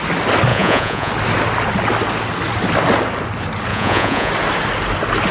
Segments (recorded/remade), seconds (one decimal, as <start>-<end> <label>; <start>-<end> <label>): 0.0-0.5 recorded; 0.5-1.1 remade; 1.1-3.7 recorded; 3.7-4.3 remade; 4.3-5.3 recorded